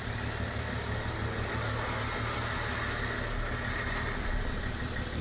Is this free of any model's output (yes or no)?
yes